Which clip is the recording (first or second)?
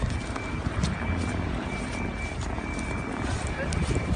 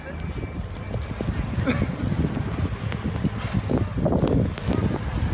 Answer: second